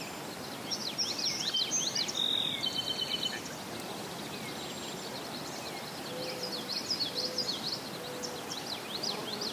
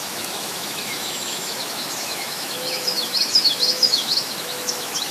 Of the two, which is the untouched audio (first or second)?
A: first